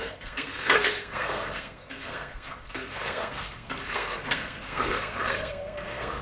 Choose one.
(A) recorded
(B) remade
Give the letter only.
B